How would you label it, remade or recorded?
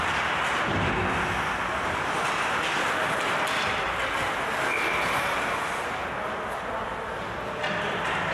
recorded